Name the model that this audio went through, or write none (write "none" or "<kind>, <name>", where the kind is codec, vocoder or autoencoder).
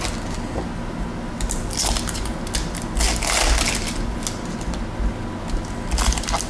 none